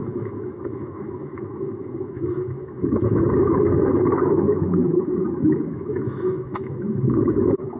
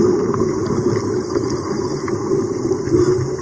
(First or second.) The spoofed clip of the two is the first